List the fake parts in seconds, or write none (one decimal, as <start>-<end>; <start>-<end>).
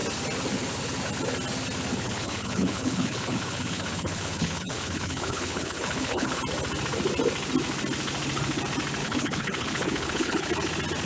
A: 1.9-6.4; 9.0-10.5